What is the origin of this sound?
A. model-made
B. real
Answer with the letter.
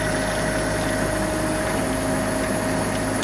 B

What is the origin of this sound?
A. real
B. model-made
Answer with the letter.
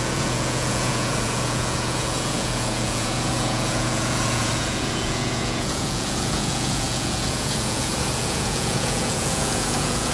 B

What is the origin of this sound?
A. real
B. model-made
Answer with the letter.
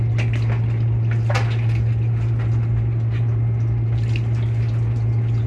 A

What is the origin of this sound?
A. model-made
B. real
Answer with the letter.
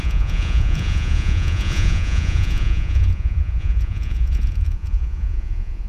A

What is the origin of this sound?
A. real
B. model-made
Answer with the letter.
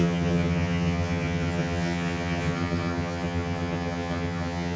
B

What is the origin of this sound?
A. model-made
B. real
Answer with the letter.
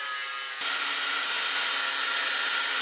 B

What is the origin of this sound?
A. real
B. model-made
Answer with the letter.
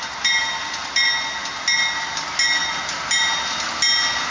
A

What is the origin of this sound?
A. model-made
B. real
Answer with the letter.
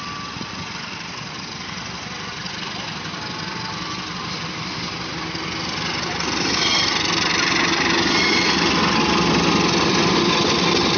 B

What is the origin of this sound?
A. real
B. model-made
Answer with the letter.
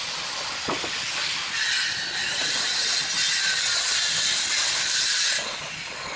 A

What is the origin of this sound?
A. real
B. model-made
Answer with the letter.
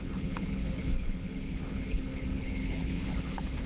B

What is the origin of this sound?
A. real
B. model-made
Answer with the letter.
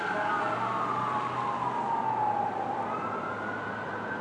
A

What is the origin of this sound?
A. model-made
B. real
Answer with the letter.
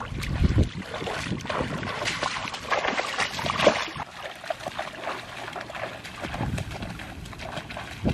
B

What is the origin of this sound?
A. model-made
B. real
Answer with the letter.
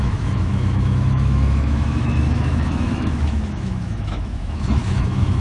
A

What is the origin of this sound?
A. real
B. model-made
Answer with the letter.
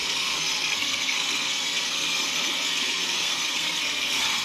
B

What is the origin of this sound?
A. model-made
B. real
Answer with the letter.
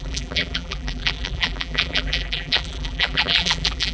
A